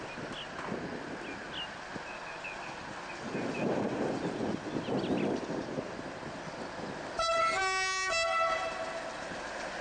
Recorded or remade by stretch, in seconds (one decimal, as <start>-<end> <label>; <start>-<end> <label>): 0.0-9.8 recorded